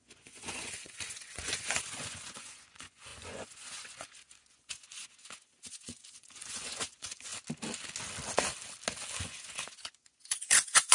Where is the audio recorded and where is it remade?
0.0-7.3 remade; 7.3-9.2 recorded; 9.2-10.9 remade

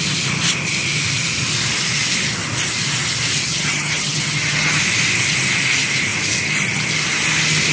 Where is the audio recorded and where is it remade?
0.0-3.5 recorded; 3.5-4.8 remade; 4.8-7.7 recorded

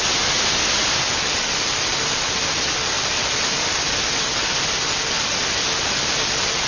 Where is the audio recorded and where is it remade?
0.0-6.7 recorded

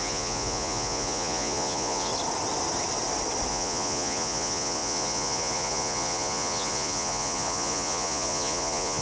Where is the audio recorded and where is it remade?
0.0-2.1 remade; 2.1-3.5 recorded; 3.5-9.0 remade